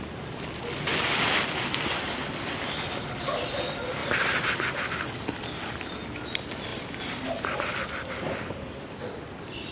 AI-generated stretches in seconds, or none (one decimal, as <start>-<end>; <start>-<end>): 4.0-4.9; 6.7-7.7